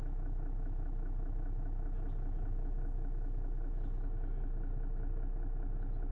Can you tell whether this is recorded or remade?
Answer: recorded